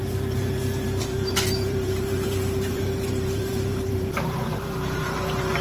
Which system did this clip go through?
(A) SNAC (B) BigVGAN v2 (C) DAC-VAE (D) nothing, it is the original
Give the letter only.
B